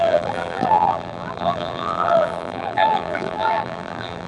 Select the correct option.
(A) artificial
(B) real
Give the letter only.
A